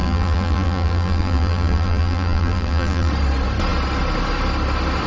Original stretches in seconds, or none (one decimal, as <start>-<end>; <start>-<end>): 3.1-5.1